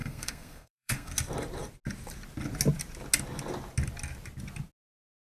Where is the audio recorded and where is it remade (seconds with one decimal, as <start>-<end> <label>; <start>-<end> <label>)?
0.0-1.1 remade; 1.1-5.2 recorded